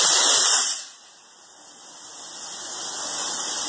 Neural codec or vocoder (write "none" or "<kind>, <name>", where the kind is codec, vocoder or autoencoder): none